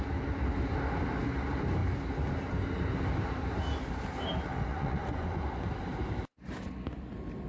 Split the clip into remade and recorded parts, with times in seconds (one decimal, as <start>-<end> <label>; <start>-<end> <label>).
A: 0.0-4.7 recorded; 4.7-5.5 remade; 5.5-7.5 recorded